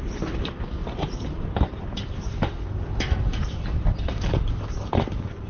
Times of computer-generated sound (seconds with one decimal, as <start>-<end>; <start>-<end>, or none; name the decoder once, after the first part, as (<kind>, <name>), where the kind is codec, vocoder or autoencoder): none